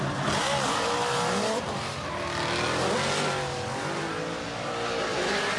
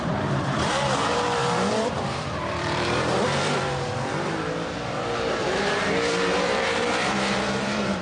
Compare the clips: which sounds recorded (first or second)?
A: first